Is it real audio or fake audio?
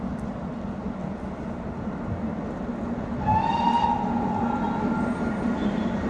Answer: real